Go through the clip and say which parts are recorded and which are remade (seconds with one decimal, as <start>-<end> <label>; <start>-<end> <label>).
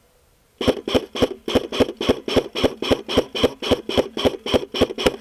0.0-5.2 recorded